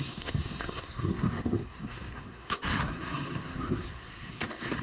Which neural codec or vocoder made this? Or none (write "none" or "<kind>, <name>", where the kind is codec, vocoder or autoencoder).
codec, SNAC